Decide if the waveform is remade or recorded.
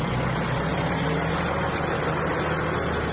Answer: recorded